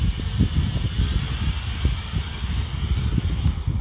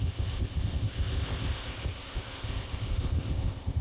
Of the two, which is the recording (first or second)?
first